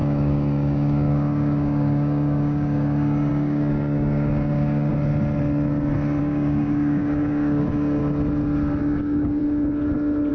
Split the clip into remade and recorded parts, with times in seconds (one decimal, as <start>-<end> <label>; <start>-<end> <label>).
0.0-4.9 remade; 4.9-6.2 recorded; 6.2-8.0 remade; 8.0-8.8 recorded; 8.8-9.4 remade; 9.4-10.3 recorded